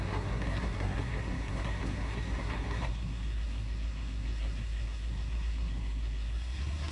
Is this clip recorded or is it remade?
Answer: remade